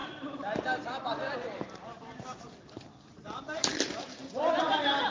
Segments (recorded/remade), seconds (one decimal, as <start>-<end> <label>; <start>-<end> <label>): 0.0-3.1 recorded; 3.1-5.1 remade